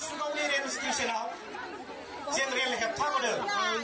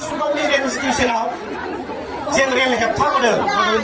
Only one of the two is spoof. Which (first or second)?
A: second